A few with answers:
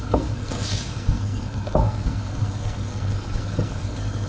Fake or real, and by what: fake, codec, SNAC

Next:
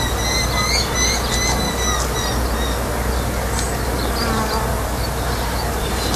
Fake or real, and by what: real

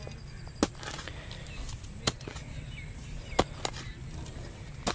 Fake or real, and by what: real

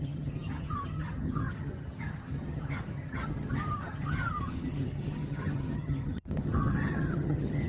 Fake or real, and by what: fake, vocoder, HiFi-GAN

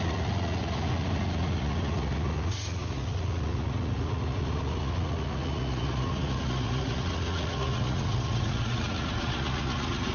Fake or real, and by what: fake, vocoder, Vocos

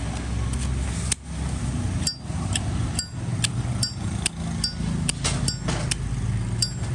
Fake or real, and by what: real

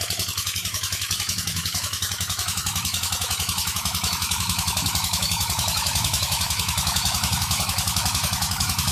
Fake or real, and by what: fake, autoencoder, DAC-VAE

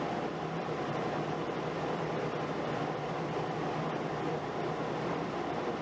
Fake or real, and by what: fake, vocoder, BigVGAN v2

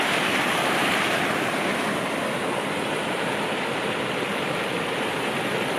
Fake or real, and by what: real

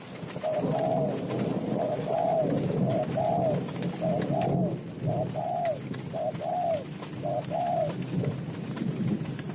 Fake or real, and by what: real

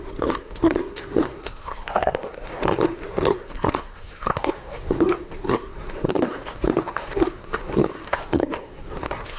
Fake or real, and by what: fake, codec, SNAC